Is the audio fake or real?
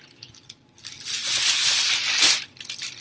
real